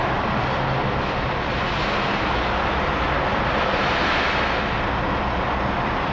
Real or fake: real